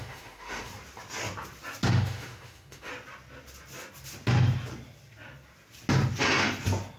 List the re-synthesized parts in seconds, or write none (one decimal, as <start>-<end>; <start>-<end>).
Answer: 0.0-0.7; 1.9-2.9